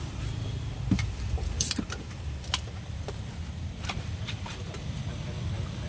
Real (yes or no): no